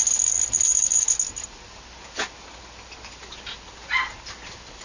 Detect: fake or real real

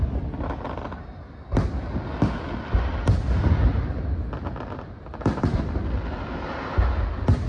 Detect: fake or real real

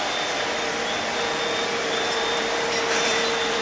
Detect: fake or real fake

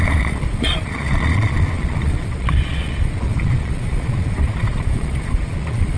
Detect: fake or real fake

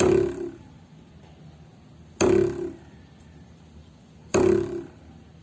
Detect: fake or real real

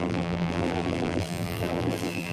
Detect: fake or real fake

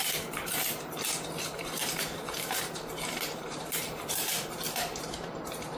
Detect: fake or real fake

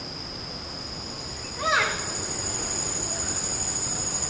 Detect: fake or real real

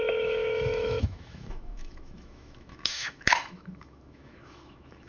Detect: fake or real fake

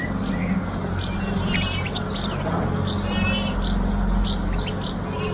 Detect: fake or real real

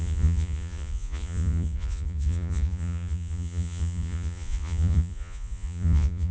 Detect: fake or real fake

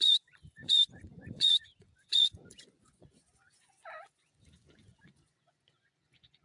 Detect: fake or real fake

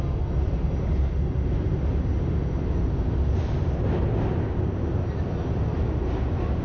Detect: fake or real real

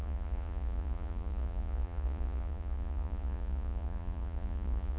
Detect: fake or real fake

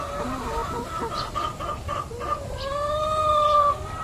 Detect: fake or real real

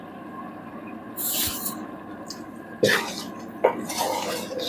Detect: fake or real real